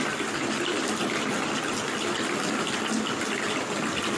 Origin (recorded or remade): recorded